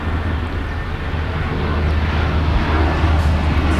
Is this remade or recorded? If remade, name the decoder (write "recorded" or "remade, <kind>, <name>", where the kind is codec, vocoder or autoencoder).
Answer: recorded